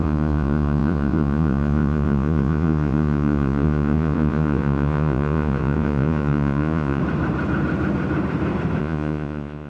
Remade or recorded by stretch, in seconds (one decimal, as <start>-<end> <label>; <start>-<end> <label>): 0.0-7.0 remade; 7.0-8.8 recorded; 8.8-9.7 remade